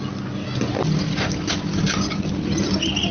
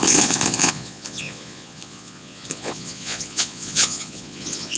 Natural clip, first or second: first